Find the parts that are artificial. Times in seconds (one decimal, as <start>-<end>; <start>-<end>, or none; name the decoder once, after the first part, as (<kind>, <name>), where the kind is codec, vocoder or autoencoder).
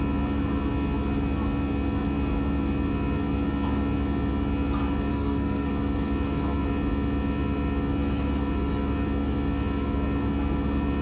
5.1-5.7 (codec, SNAC)